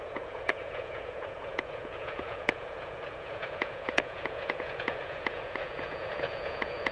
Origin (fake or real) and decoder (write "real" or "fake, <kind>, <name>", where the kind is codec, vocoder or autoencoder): fake, vocoder, Vocos